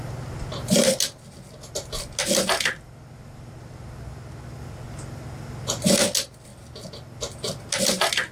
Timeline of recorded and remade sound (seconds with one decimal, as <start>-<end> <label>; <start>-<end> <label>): 0.0-8.3 recorded